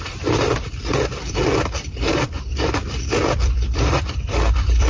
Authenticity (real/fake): fake